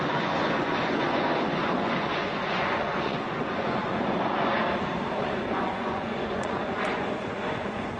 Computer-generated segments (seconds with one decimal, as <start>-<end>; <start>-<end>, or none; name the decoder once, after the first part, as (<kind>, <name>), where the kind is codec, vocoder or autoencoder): 0.0-4.6 (vocoder, Vocos); 5.2-8.0